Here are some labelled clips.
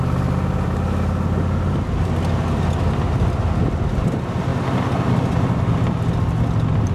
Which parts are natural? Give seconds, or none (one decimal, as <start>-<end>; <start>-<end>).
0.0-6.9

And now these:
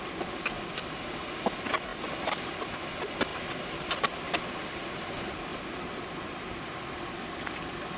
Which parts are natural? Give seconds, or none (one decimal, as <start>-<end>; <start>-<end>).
0.0-8.0

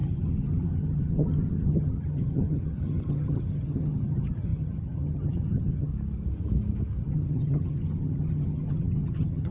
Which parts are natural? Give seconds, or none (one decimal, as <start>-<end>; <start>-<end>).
5.9-7.0

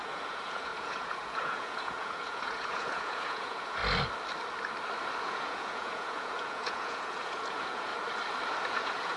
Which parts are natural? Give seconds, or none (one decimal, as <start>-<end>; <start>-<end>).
3.8-5.2; 7.9-8.6

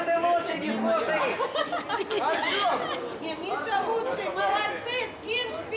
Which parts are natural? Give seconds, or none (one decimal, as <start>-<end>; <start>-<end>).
0.0-5.8

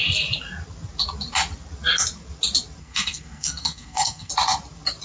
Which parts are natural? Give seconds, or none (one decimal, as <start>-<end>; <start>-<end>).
0.0-2.8; 4.3-5.0

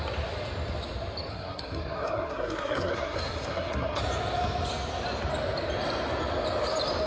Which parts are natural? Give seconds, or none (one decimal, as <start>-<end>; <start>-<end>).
0.0-1.3; 4.0-7.1

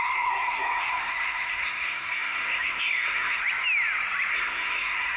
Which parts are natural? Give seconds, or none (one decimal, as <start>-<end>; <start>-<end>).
3.4-4.3